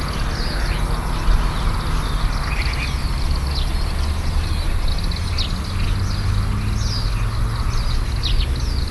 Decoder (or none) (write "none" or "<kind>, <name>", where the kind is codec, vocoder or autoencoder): none